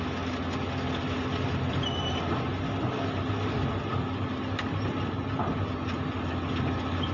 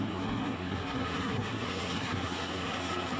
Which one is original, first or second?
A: first